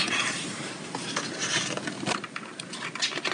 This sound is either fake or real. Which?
real